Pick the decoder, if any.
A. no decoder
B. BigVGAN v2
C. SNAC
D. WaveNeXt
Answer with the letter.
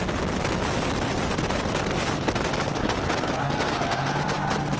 A